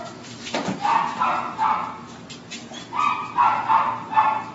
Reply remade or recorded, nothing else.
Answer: recorded